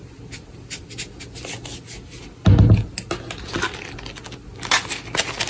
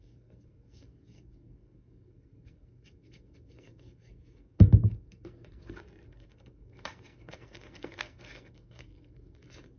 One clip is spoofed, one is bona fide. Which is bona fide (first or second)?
first